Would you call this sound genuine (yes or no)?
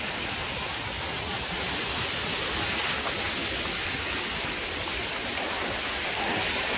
yes